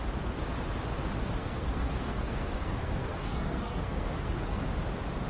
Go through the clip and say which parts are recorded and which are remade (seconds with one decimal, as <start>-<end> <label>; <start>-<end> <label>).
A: 0.0-1.4 recorded; 1.4-4.6 remade; 4.6-5.3 recorded